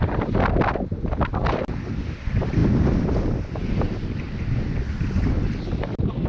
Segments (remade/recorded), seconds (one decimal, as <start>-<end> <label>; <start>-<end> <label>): 0.0-6.3 recorded